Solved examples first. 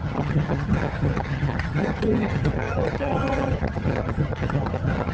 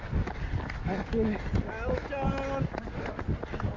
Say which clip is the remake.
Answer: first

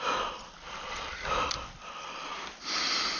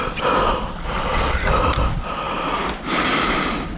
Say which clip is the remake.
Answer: second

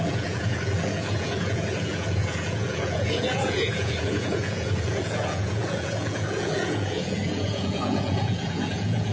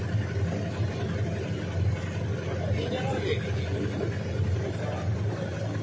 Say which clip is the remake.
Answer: first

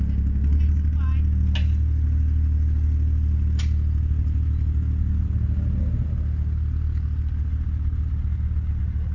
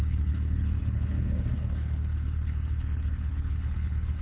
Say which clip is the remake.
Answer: second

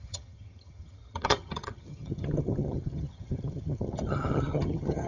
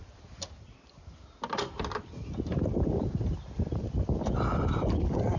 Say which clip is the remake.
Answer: first